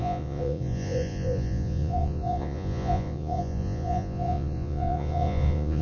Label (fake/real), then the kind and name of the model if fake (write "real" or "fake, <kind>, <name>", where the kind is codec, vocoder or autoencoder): fake, vocoder, Vocos